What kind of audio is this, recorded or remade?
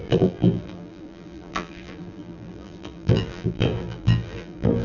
remade